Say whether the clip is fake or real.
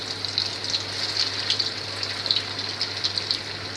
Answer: real